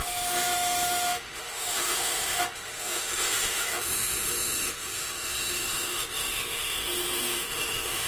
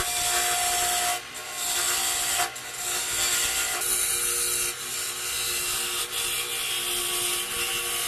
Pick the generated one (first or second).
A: first